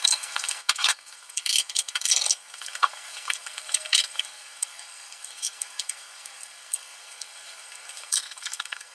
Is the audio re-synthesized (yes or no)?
yes